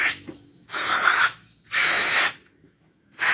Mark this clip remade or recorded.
remade